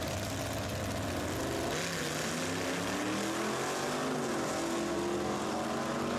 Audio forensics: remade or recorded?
recorded